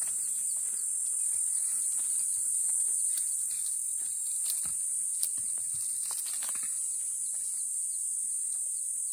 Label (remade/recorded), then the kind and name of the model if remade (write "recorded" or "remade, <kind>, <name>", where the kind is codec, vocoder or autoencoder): recorded